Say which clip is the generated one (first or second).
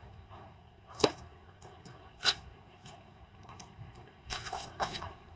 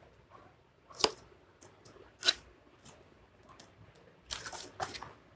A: first